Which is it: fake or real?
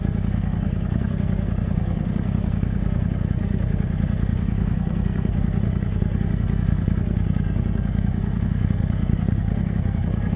fake